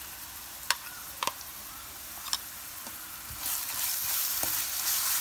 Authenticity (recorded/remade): remade